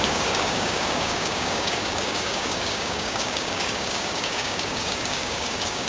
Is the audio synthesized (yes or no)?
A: yes